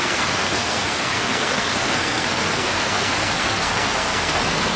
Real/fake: fake